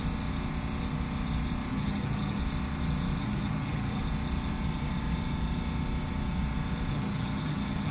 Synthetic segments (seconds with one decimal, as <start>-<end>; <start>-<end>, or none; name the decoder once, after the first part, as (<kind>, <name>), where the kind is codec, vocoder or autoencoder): 1.7-2.4 (vocoder, HiFi-GAN); 3.2-4.0; 6.9-7.9